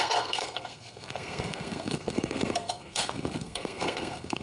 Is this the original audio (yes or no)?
no